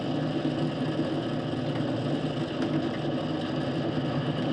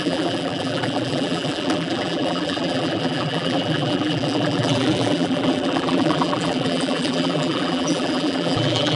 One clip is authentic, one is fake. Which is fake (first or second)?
second